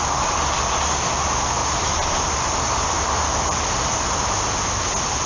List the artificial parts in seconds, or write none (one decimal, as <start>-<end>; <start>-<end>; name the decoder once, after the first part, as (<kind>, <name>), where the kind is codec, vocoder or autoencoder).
none